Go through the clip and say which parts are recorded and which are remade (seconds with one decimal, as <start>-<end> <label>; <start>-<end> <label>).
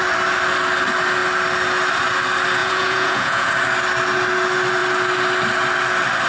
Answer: 0.0-2.6 recorded; 2.6-3.5 remade; 3.5-6.3 recorded